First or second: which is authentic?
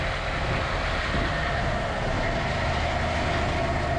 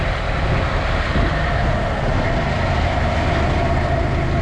first